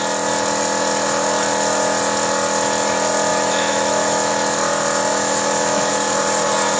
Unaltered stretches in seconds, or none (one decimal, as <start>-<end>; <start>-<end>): 0.0-3.3; 4.3-5.1; 5.9-6.8